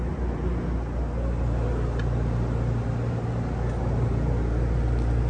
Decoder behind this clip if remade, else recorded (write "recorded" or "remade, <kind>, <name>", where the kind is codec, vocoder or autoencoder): recorded